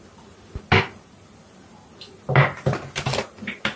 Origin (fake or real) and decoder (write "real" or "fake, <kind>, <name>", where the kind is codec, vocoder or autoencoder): real